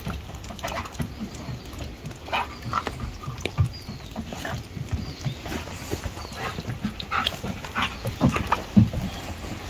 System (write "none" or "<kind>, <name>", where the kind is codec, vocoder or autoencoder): none